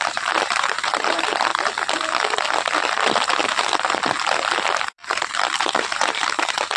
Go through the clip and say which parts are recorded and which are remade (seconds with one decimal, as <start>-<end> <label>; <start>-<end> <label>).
0.0-1.5 remade; 1.5-4.8 recorded; 4.8-6.8 remade